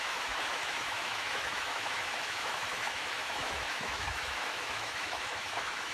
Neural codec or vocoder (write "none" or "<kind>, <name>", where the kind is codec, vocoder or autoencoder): autoencoder, DAC-VAE